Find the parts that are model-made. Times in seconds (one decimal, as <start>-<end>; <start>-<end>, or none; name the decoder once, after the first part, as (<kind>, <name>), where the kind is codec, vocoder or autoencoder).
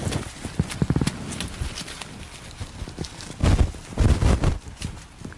none